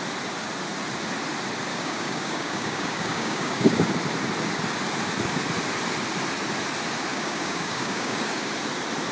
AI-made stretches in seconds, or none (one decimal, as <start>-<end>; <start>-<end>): 1.7-3.9; 7.1-8.5